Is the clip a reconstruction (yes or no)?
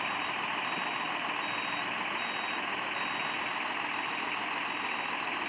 no